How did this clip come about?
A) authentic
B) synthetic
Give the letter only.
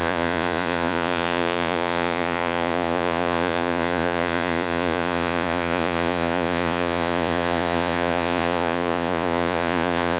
B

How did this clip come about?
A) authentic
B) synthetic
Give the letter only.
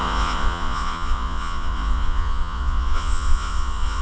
B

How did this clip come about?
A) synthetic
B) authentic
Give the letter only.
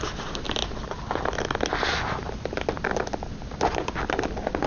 B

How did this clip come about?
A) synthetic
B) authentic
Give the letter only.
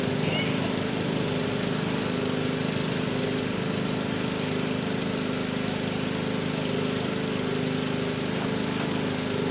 B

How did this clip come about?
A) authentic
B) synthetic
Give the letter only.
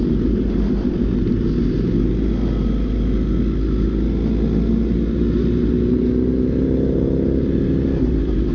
A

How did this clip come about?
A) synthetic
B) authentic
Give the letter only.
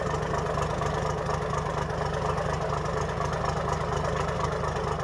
B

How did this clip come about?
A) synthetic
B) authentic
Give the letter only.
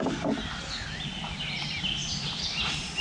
B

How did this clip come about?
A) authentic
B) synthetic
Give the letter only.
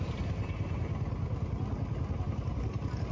A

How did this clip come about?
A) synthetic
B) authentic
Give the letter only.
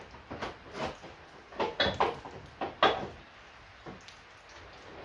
B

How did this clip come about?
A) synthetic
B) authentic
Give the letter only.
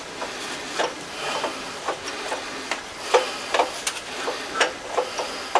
B